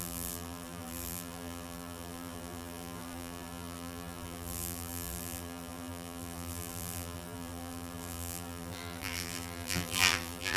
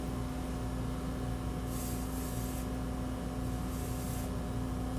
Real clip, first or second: second